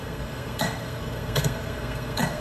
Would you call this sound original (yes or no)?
no